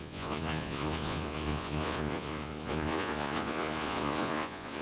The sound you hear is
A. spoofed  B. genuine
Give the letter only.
A